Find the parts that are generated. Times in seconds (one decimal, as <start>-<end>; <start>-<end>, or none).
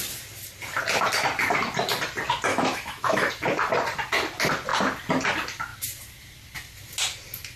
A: 2.5-3.3